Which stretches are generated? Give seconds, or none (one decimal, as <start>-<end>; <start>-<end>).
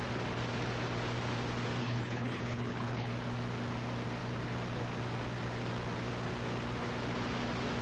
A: 1.8-3.1